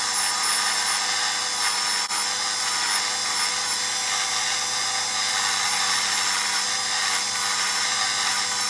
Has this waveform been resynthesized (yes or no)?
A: no